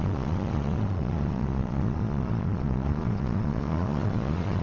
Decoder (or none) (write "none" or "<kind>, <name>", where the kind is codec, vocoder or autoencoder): vocoder, Vocos